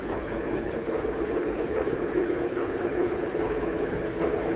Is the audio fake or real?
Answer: fake